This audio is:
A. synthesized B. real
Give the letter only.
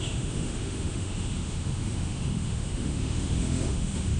A